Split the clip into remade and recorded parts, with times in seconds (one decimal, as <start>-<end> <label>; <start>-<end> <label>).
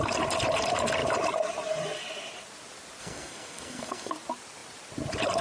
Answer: 0.0-3.0 recorded; 3.0-4.1 remade; 4.1-5.4 recorded